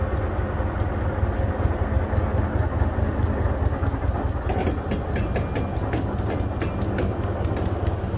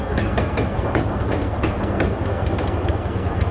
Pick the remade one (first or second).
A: second